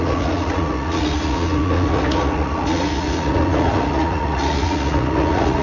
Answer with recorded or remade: remade